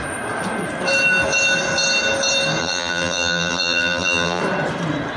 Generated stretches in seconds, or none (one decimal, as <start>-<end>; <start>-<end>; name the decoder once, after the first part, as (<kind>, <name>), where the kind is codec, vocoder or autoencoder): 2.6-4.4 (vocoder, BigVGAN v2)